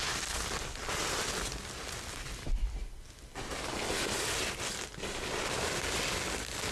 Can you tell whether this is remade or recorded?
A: recorded